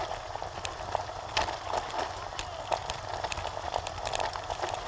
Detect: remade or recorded recorded